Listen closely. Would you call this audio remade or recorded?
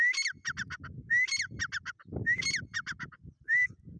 recorded